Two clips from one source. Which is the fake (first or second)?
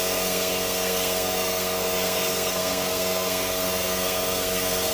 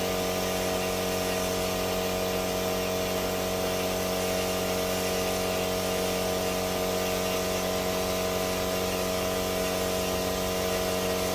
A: first